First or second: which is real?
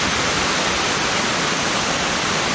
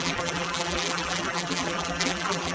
first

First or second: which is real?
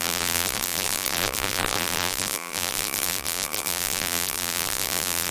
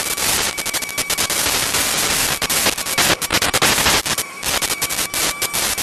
second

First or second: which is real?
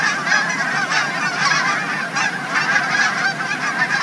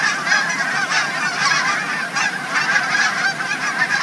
first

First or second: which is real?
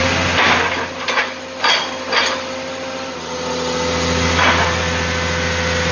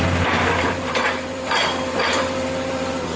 first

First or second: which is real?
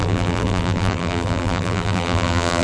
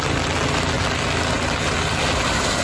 second